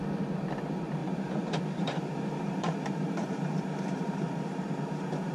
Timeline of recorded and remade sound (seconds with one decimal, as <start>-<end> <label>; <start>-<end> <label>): 0.0-1.0 recorded; 1.0-4.2 remade; 4.2-5.3 recorded